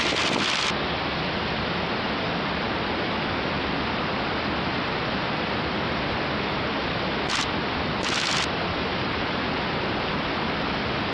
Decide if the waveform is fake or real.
real